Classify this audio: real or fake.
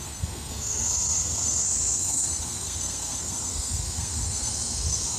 fake